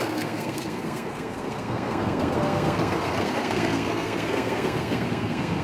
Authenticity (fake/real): fake